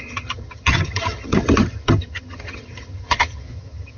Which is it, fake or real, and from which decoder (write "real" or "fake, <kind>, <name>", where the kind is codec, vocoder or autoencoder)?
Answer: fake, vocoder, HiFi-GAN